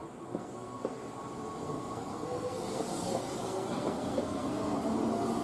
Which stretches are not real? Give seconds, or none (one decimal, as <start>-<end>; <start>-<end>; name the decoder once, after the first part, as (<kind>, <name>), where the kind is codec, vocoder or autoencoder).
0.0-1.2 (codec, SNAC); 1.6-4.8